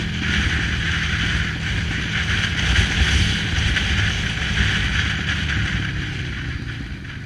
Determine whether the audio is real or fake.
real